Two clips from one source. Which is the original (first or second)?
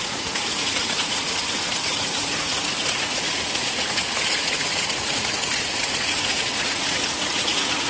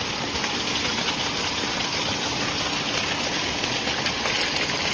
second